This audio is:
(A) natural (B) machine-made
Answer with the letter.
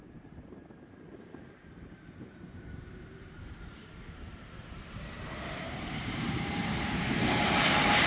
B